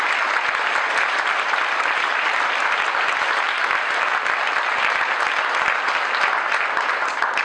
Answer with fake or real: real